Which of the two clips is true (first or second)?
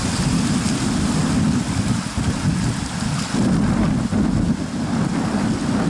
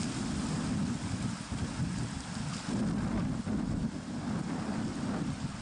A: second